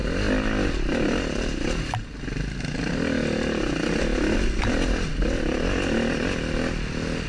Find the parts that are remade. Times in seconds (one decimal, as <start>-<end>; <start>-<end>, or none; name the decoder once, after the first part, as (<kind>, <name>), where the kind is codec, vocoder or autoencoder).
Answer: none